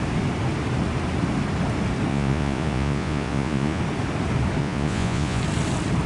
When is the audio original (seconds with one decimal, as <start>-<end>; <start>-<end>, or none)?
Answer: 0.0-2.1; 3.8-4.6; 5.4-6.1